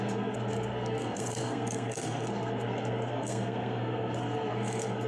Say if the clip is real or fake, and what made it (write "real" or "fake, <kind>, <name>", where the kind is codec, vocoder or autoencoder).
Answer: fake, codec, SNAC